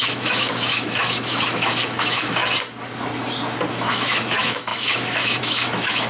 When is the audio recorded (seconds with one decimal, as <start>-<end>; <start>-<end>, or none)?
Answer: 2.4-3.7